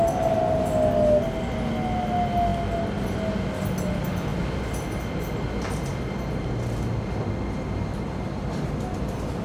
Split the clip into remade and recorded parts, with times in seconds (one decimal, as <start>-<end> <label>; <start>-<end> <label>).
0.0-9.4 recorded